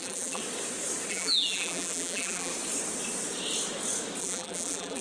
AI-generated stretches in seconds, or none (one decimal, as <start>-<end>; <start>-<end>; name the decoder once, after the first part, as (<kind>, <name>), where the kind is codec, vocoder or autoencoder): 0.0-0.4 (vocoder, BigVGAN v2); 1.1-2.5; 4.2-5.0